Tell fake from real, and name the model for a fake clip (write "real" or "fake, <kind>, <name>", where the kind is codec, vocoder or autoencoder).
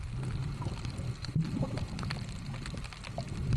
real